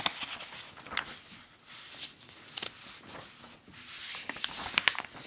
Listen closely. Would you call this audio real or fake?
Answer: real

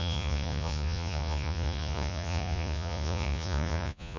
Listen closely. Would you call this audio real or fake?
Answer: fake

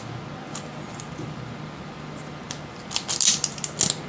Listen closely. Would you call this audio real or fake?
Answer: real